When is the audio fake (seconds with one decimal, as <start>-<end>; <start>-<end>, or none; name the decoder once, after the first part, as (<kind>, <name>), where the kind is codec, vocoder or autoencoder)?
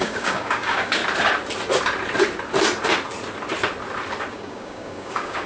0.0-1.0 (codec, DAC); 4.3-5.5